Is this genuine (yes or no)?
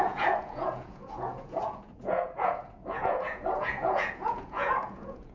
no